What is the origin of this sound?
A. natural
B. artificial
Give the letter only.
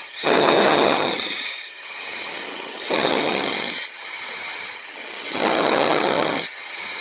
B